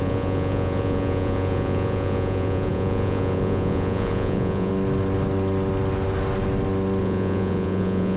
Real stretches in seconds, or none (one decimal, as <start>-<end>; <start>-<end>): 4.7-7.0